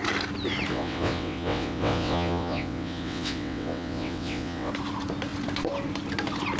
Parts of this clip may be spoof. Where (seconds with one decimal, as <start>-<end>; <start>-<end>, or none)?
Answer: 0.7-4.7